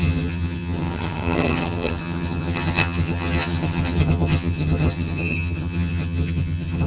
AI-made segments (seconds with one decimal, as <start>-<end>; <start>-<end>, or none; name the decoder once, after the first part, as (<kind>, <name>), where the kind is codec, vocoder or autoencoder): 0.0-6.9 (vocoder, HiFi-GAN)